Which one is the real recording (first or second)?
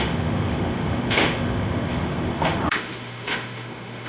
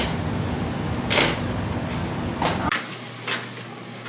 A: second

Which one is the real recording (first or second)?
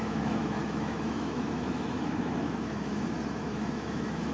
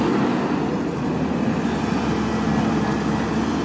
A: second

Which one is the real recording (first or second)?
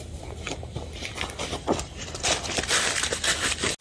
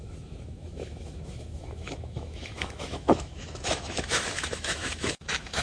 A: first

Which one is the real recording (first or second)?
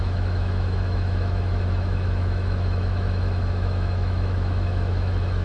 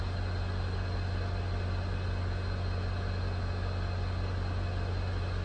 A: second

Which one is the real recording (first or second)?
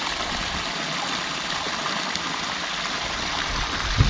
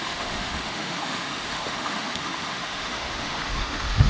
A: first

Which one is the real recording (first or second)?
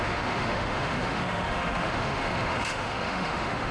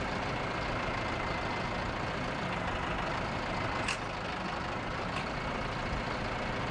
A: second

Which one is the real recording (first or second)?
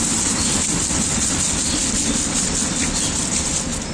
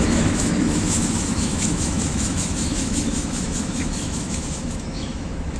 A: first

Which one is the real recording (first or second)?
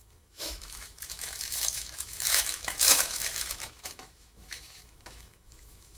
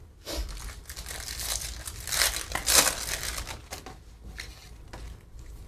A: second